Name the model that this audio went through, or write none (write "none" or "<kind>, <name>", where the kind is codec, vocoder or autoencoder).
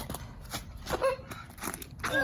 none